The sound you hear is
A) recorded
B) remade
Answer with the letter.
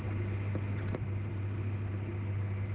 A